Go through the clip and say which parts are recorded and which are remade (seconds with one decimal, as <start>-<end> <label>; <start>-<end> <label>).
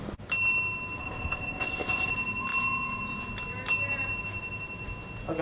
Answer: 0.0-1.0 recorded; 1.0-2.1 remade; 2.1-5.4 recorded